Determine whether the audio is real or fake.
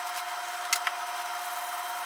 real